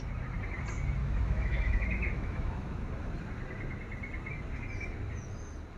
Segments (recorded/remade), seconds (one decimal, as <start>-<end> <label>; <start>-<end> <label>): 0.0-1.0 recorded; 1.0-3.1 remade; 3.1-5.8 recorded